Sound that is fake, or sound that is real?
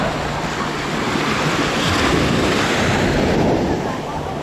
real